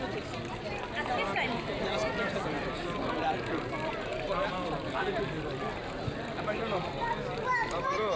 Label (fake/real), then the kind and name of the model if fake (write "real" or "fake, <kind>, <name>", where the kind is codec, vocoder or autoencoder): real